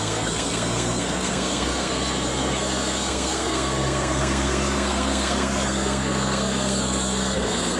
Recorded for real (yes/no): no